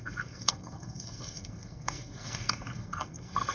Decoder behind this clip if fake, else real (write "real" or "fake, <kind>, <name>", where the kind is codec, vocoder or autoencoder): fake, codec, SNAC